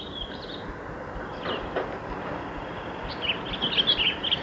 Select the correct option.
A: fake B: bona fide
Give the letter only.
B